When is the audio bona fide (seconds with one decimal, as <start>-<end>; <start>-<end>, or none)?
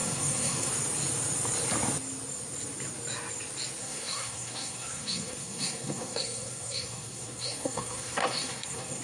0.7-3.8